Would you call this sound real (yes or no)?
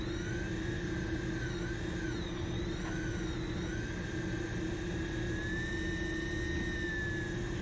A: yes